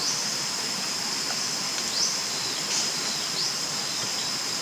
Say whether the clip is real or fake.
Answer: real